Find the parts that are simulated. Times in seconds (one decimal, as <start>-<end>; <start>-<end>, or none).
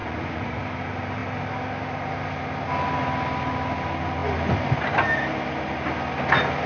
0.0-0.6